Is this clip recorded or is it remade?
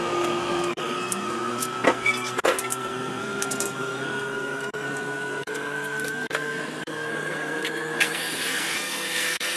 remade